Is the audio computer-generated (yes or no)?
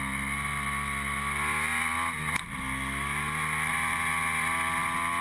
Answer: no